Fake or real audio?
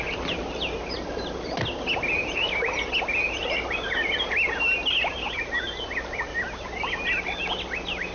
real